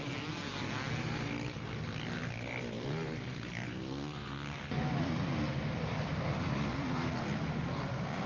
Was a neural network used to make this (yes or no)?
no